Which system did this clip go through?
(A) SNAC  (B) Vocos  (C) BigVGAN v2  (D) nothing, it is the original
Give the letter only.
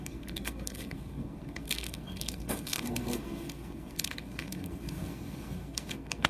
A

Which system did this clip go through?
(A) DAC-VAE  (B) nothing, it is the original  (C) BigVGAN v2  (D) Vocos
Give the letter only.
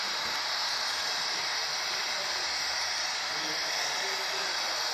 C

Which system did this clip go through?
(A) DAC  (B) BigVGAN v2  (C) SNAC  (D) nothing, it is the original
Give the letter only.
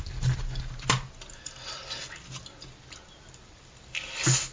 D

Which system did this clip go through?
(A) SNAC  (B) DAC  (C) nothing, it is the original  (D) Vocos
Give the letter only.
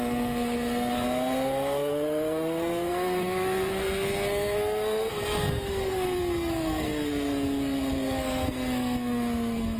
A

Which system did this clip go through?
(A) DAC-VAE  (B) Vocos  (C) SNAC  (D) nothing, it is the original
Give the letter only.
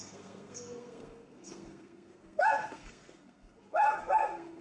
C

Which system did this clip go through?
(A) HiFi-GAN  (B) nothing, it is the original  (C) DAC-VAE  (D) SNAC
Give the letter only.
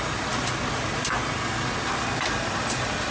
B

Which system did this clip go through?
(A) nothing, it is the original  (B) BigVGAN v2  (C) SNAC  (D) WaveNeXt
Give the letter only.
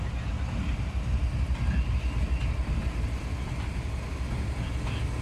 A